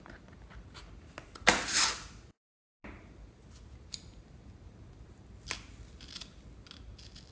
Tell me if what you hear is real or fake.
real